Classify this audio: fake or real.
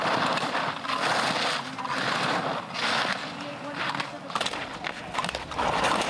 real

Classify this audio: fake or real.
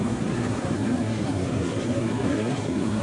fake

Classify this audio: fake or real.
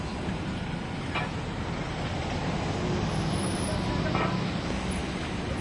real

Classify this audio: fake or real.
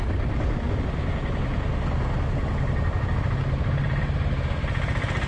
real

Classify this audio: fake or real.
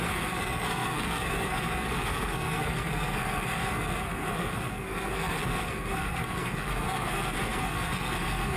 fake